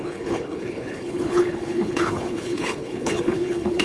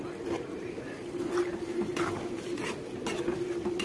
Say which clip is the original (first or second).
second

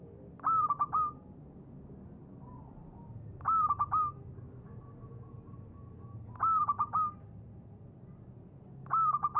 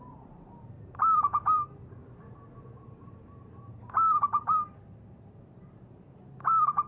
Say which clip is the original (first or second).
first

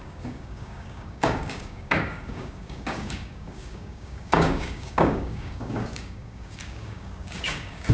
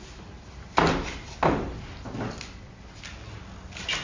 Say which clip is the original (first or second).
second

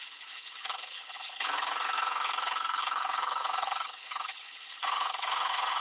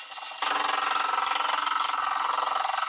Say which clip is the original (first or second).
second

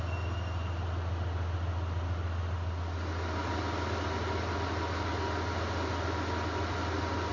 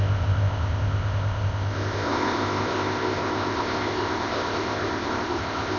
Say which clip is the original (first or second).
first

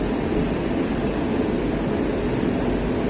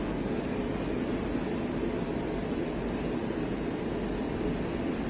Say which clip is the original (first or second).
second